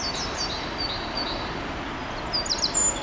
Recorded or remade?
recorded